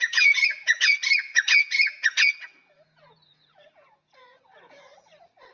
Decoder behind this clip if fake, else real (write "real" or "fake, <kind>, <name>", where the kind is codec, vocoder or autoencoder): fake, vocoder, Vocos